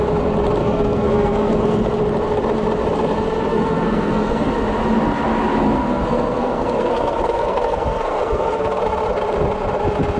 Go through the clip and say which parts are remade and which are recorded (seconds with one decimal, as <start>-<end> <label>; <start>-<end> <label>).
0.0-0.6 recorded; 0.6-1.8 remade; 1.8-3.5 recorded; 3.5-4.5 remade; 4.5-5.7 recorded; 5.7-8.8 remade; 8.8-10.2 recorded